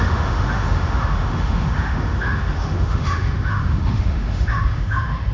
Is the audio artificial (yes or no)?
yes